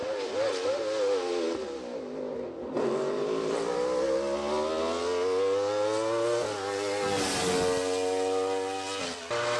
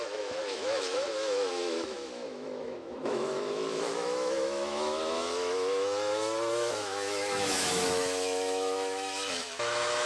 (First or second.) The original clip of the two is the first